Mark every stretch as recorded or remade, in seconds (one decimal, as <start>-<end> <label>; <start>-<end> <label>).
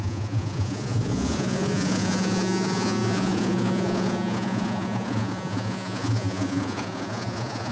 0.0-7.7 remade